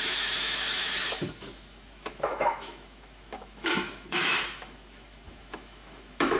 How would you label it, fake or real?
fake